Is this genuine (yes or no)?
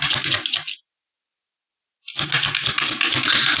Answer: yes